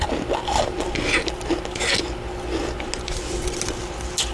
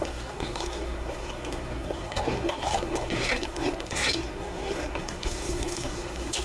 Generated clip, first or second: second